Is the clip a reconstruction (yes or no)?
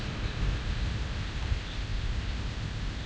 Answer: yes